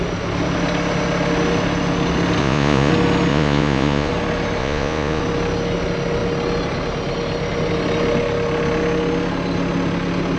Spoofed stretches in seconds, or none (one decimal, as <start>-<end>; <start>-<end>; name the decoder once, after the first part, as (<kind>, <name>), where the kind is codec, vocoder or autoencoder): 2.4-2.9 (vocoder, Vocos); 3.3-4.1; 4.6-5.2